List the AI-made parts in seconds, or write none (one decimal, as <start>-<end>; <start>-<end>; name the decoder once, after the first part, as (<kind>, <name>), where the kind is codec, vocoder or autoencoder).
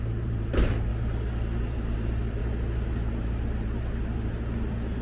0.0-0.9 (vocoder, BigVGAN v2); 1.6-2.4; 3.2-5.0